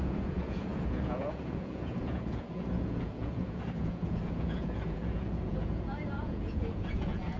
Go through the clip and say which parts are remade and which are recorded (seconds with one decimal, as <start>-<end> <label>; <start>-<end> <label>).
0.0-7.4 remade

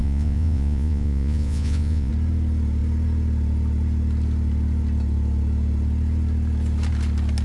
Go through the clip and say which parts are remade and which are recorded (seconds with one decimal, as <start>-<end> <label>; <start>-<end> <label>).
0.0-2.1 remade; 2.1-7.4 recorded